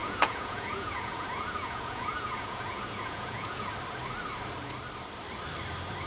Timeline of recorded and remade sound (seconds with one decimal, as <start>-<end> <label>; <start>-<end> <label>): 0.0-3.7 remade; 3.7-6.1 recorded